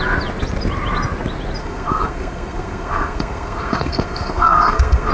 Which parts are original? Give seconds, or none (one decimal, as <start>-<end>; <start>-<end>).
0.0-1.6